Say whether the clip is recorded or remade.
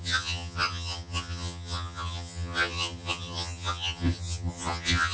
remade